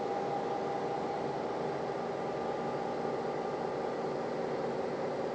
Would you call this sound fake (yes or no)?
no